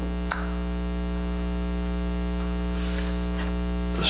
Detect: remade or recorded recorded